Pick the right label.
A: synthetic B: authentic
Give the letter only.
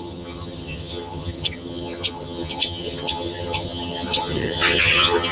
A